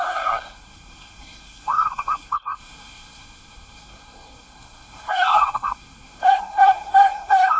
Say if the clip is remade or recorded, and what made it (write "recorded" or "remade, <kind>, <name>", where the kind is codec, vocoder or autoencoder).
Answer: remade, codec, SNAC